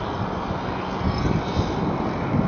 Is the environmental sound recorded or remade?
recorded